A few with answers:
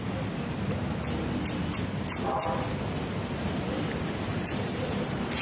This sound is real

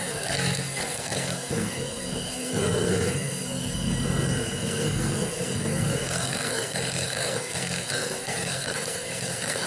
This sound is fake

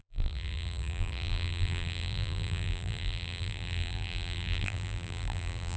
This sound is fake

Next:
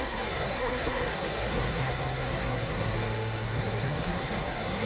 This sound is fake